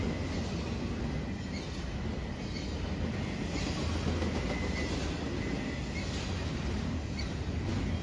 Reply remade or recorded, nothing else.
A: recorded